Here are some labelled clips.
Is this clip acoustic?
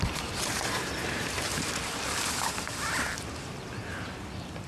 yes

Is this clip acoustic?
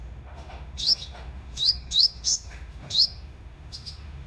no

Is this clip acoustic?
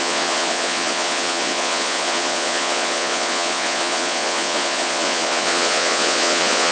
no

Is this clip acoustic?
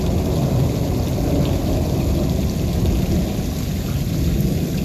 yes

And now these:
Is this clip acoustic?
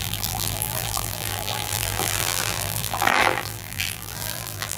no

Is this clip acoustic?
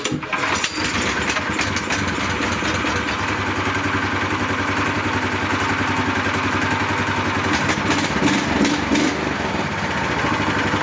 yes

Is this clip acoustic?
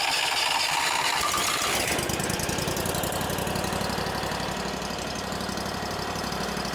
yes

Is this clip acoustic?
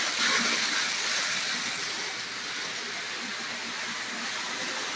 yes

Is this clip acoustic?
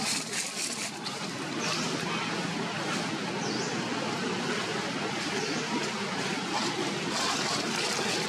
yes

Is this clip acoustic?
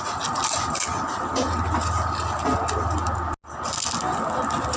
yes